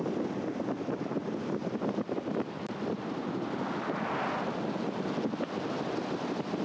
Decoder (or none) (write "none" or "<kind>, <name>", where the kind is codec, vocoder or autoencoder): none